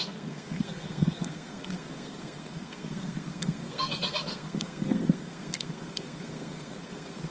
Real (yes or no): no